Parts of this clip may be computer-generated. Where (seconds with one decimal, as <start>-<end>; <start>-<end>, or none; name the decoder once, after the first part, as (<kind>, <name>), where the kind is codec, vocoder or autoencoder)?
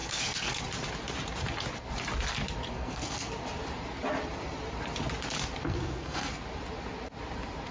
0.0-0.6 (codec, SNAC); 2.7-3.3; 5.6-6.4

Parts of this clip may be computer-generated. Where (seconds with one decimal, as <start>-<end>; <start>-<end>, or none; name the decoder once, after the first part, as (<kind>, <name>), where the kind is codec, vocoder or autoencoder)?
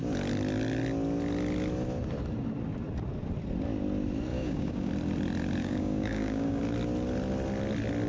4.3-4.9 (codec, DAC); 5.6-6.6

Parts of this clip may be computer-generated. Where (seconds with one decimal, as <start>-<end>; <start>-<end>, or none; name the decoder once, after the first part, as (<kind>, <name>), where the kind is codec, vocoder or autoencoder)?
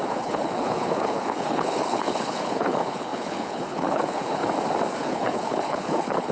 0.0-4.4 (codec, HILCodec); 4.9-6.3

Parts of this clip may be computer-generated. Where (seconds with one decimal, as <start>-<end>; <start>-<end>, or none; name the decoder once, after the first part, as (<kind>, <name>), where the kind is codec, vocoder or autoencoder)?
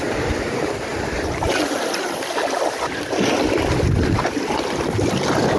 none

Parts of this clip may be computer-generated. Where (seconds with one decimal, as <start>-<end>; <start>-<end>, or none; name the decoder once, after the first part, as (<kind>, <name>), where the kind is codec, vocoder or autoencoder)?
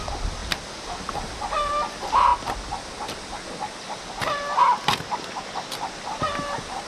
none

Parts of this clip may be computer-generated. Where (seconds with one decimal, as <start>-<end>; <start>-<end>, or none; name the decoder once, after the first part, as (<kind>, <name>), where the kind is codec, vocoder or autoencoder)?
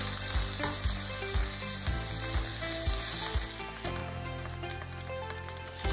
1.4-2.1 (vocoder, BigVGAN v2); 2.5-3.2; 4.0-4.8